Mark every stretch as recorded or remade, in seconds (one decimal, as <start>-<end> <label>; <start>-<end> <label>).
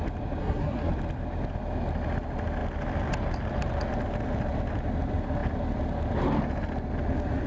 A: 0.0-0.4 recorded; 0.4-0.9 remade; 0.9-7.5 recorded